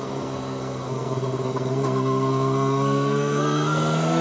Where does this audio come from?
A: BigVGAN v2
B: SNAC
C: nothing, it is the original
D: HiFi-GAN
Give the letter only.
B